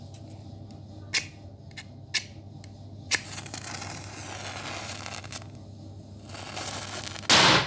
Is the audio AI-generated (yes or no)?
no